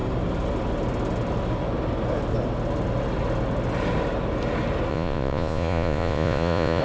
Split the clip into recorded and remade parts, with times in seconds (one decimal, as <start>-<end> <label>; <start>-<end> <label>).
0.0-4.9 recorded; 4.9-6.8 remade